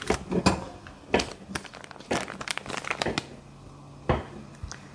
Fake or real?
real